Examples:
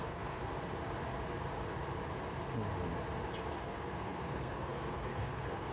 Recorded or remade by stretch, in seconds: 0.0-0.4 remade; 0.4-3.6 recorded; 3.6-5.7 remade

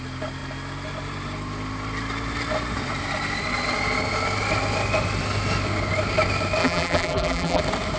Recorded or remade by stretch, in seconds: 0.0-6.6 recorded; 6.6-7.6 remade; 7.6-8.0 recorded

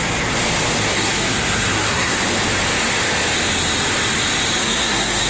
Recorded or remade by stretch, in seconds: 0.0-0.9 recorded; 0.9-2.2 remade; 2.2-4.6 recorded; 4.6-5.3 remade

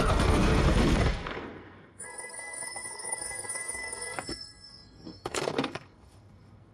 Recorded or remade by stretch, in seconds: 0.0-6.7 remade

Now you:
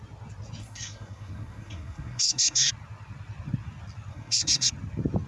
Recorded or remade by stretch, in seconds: 0.0-0.6 recorded; 0.6-2.7 remade; 2.7-4.1 recorded; 4.1-4.7 remade; 4.7-5.3 recorded

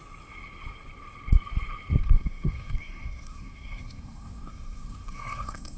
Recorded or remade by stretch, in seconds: 0.0-2.0 recorded; 2.0-5.8 remade

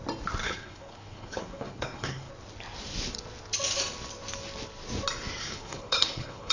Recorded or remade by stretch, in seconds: 0.0-0.4 recorded; 0.4-2.3 remade; 2.3-5.4 recorded; 5.4-6.5 remade

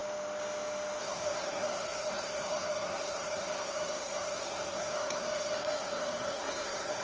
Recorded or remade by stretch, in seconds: 0.0-1.0 recorded; 1.0-7.0 remade